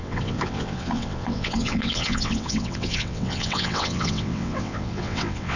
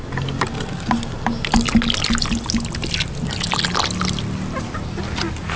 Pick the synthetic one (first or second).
first